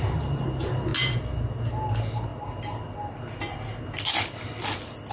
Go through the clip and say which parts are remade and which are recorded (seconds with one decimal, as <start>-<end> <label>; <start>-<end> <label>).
0.0-0.9 remade; 0.9-1.9 recorded; 1.9-2.3 remade; 2.3-5.1 recorded